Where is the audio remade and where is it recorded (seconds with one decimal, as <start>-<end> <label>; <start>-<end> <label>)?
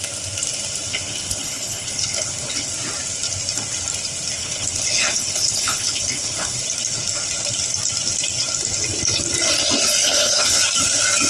0.0-0.9 recorded; 0.9-2.7 remade; 2.7-4.4 recorded; 4.4-6.6 remade; 6.6-10.0 recorded; 10.0-10.6 remade; 10.6-11.3 recorded